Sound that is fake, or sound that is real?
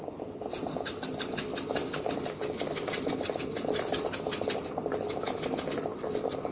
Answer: real